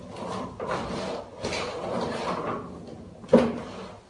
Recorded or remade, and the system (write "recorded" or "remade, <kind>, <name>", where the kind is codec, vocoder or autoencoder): recorded